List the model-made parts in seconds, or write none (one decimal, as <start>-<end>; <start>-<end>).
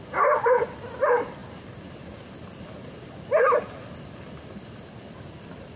none